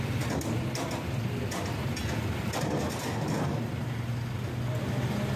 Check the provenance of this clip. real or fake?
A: real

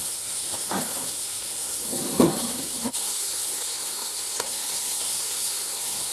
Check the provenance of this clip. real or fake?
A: fake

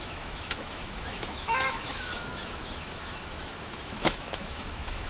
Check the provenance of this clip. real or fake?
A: fake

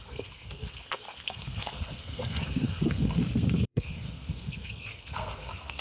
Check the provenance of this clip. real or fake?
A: fake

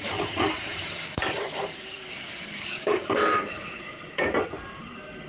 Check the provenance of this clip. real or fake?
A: fake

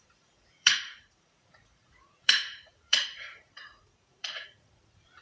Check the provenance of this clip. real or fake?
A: fake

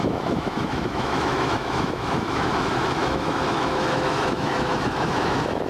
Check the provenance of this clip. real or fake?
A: fake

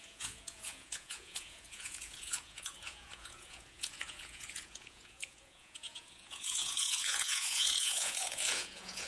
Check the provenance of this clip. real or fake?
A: fake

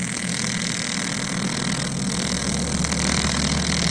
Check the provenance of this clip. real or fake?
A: real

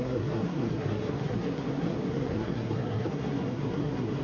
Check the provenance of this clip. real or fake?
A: fake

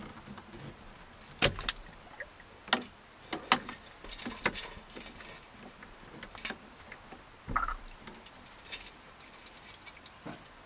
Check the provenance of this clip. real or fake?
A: real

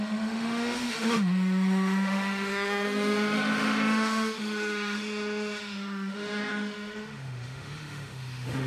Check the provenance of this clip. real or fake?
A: fake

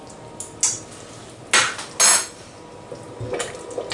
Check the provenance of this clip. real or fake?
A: real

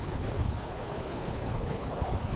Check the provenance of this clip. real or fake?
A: fake